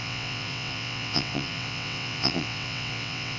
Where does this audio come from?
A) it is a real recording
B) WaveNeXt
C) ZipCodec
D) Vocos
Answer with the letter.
B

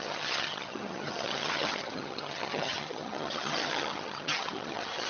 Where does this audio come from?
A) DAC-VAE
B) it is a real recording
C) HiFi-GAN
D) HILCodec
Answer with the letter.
C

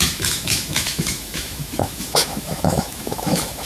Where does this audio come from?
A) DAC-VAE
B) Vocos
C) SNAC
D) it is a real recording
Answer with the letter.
A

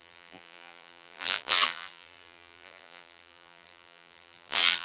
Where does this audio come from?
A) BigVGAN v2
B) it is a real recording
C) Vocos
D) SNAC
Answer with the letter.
A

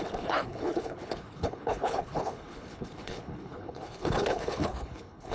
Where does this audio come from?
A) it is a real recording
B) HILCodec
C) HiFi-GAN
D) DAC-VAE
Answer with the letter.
B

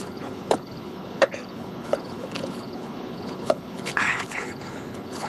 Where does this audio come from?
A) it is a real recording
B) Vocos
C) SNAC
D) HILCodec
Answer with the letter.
D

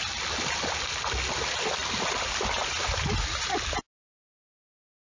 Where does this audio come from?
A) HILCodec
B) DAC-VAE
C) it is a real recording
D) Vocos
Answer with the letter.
C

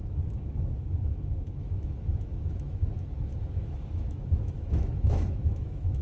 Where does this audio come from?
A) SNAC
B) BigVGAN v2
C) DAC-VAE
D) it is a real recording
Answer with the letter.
C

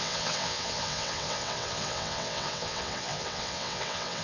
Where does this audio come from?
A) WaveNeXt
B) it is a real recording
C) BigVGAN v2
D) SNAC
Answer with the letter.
A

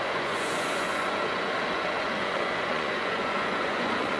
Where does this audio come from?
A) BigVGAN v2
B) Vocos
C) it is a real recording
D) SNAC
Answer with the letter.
B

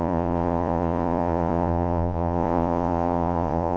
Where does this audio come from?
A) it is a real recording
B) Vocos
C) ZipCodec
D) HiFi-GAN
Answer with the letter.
B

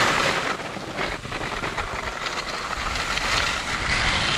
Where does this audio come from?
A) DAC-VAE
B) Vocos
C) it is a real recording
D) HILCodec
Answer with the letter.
C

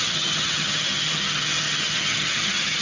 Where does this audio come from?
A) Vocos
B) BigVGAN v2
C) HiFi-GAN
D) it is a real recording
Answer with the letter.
C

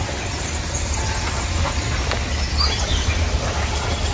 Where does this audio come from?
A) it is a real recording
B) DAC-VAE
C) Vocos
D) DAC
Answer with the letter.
A